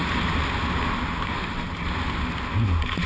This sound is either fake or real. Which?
real